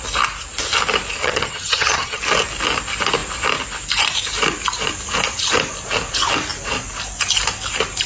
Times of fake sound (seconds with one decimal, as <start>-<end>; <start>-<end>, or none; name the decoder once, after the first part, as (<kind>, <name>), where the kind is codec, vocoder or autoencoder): 1.2-2.2 (vocoder, HiFi-GAN)